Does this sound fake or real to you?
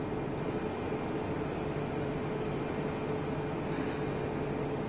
real